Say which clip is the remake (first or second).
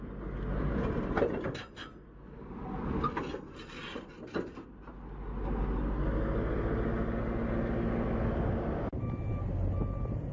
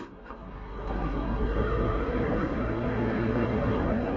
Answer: second